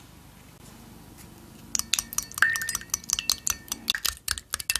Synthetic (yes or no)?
no